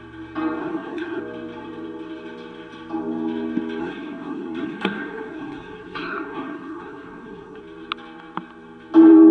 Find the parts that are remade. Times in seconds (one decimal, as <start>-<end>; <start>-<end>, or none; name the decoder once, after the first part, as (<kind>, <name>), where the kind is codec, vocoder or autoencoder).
0.6-1.2 (codec, SNAC); 3.8-7.6